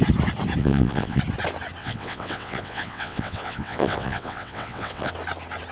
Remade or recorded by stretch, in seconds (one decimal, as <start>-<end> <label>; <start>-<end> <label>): 0.0-0.6 recorded; 0.6-1.2 remade; 1.2-1.8 recorded; 1.8-5.1 remade; 5.1-5.7 recorded